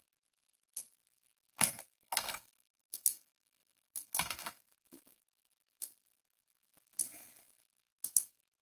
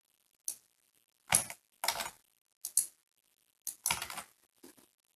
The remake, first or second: first